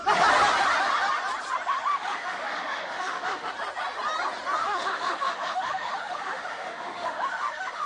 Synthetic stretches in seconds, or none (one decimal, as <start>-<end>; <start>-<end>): 1.9-3.5; 4.6-7.9